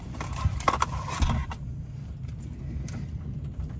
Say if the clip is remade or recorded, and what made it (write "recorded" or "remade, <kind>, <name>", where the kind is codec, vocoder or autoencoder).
recorded